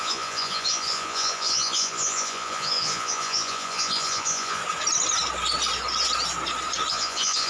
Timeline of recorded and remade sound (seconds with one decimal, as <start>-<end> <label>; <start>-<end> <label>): 0.0-4.6 remade; 4.6-6.9 recorded; 6.9-7.5 remade